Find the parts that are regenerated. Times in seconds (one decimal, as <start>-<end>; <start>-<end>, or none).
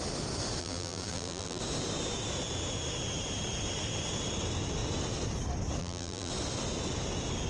0.6-1.6; 5.8-6.3